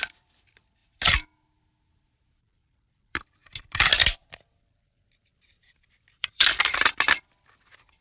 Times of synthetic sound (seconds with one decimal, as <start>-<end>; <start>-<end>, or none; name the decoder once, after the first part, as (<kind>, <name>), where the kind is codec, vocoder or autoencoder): 0.0-0.8 (vocoder, BigVGAN v2); 2.4-3.4; 4.6-8.0